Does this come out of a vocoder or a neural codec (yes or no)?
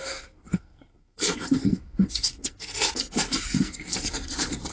yes